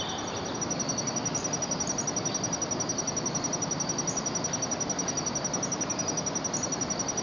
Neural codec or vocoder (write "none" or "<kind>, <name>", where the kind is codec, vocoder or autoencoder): none